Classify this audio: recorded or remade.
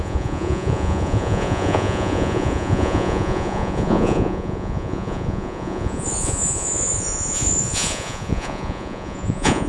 remade